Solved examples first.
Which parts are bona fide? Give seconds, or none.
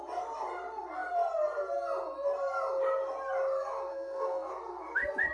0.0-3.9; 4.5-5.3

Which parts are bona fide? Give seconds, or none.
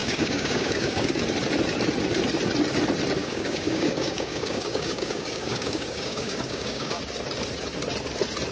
1.2-3.2; 7.0-8.5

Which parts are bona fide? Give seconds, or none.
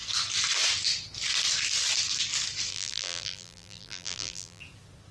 0.0-2.7; 4.6-5.1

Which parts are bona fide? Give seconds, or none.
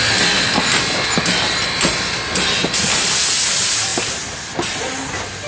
0.0-5.5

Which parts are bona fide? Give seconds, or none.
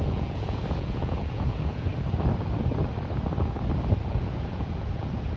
1.9-4.0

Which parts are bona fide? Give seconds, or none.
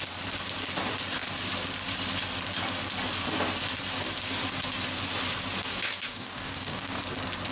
0.0-5.6; 7.0-7.5